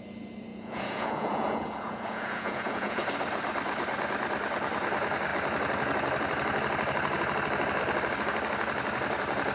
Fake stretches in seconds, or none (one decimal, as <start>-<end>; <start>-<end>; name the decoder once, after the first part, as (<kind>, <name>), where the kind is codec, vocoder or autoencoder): 0.5-3.0 (vocoder, Vocos)